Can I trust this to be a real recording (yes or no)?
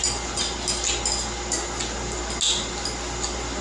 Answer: yes